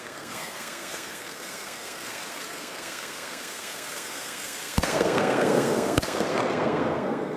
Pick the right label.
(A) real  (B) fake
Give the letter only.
B